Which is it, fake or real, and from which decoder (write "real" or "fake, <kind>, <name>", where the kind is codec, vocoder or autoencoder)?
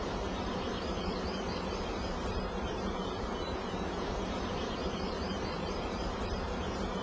fake, vocoder, BigVGAN v2